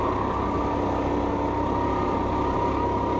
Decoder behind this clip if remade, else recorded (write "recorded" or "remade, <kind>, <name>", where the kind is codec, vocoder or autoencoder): recorded